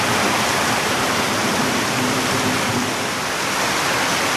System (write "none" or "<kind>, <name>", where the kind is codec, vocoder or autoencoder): vocoder, BigVGAN v2